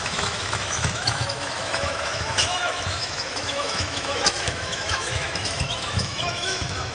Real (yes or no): no